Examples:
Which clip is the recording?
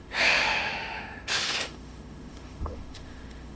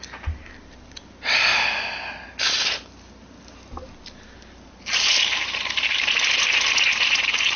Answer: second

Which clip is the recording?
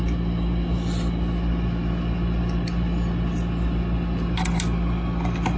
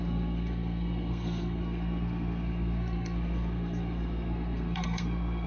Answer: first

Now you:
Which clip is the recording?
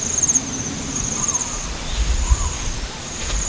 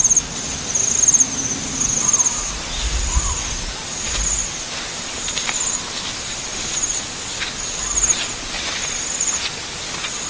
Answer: second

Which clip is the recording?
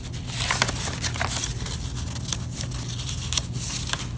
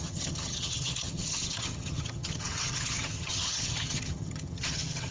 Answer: first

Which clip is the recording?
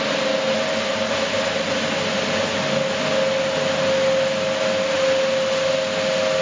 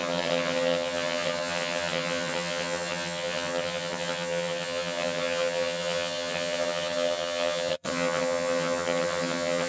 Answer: first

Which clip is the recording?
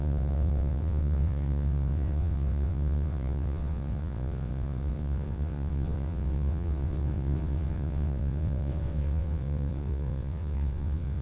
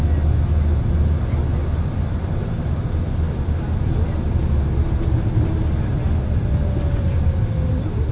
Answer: second